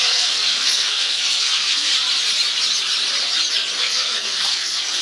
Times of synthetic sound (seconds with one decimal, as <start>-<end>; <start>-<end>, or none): 0.0-1.9; 3.8-5.0